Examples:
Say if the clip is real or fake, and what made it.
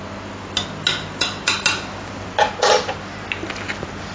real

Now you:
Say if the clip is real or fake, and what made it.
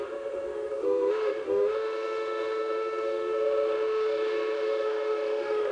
fake, autoencoder, DAC-VAE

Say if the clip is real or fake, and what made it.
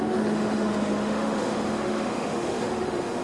fake, autoencoder, DAC-VAE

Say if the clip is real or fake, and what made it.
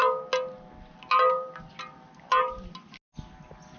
real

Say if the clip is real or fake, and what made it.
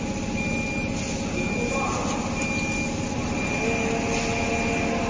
real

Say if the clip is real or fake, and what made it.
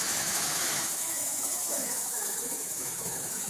fake, autoencoder, DAC-VAE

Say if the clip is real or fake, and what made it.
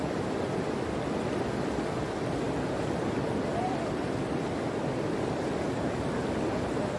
real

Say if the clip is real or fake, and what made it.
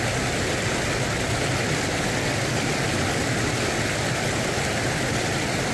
real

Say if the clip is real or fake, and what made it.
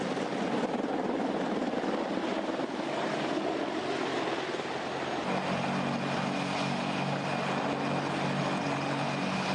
real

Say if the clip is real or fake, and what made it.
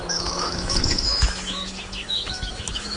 fake, autoencoder, DAC-VAE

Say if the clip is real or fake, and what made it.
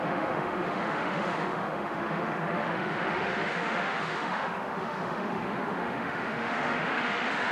fake, autoencoder, DAC-VAE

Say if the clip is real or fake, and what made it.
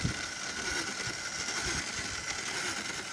real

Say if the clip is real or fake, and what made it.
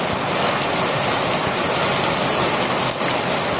real